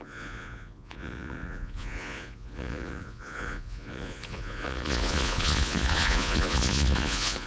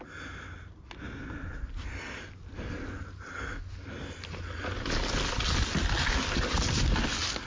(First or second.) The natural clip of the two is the second